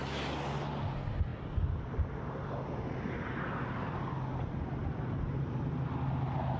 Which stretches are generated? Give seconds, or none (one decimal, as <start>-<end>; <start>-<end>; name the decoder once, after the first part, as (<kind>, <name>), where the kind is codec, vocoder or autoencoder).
none